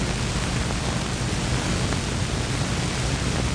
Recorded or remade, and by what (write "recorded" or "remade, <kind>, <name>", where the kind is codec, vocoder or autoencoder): recorded